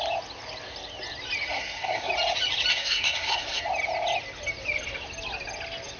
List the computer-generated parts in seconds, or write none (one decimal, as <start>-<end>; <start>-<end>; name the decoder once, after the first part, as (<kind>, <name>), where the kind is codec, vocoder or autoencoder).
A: 1.5-2.1 (codec, SNAC); 2.7-3.6